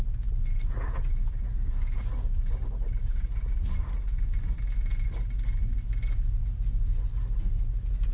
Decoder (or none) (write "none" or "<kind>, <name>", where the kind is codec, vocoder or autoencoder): none